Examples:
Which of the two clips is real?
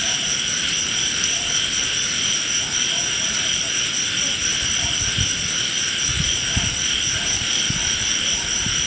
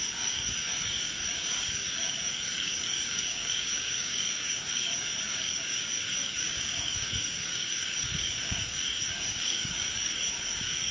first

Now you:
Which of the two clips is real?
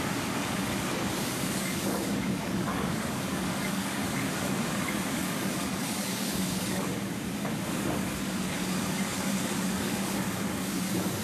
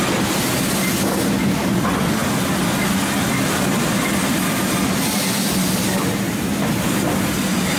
second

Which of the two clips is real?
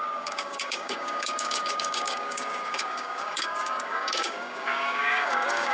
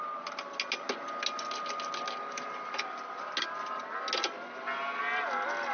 second